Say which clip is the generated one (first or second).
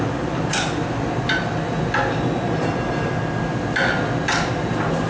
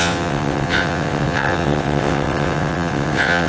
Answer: second